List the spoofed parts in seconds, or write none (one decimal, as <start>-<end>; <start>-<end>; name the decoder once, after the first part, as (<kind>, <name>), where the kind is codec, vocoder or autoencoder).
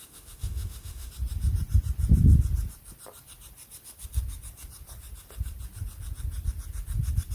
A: 0.0-1.1 (autoencoder, DAC-VAE)